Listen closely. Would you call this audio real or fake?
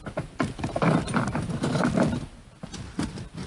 real